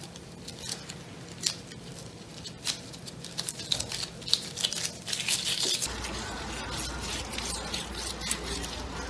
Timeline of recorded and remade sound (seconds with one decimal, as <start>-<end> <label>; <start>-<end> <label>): 0.0-9.1 recorded